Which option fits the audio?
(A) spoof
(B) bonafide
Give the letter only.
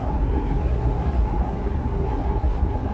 A